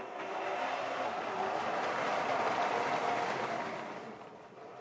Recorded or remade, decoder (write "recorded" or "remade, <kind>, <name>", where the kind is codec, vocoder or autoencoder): recorded